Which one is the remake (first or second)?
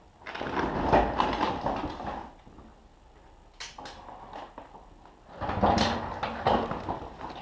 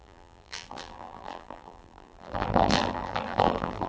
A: second